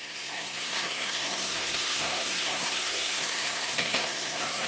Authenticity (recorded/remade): remade